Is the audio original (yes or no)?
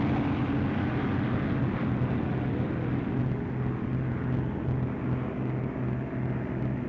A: yes